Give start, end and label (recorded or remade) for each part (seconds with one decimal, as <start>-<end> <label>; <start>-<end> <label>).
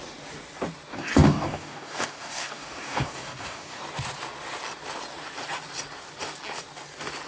0.0-0.9 recorded; 0.9-3.8 remade; 3.8-7.3 recorded